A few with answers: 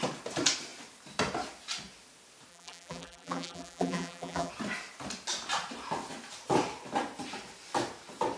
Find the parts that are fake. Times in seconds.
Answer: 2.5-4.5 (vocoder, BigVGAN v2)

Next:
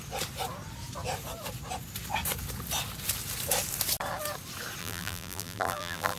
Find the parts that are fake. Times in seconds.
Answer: 4.8-6.2 (vocoder, BigVGAN v2)

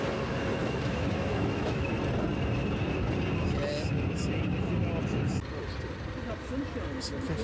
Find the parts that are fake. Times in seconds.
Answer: 0.6-1.9 (autoencoder, DAC-VAE)

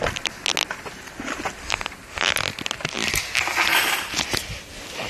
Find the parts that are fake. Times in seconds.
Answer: none

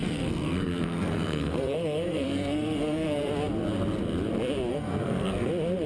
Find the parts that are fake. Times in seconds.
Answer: 0.0-3.3 (codec, SNAC); 4.7-5.5